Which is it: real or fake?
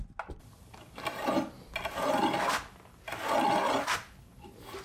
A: real